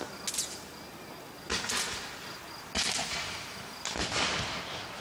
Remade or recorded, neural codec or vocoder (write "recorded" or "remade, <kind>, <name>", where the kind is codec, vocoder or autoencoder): recorded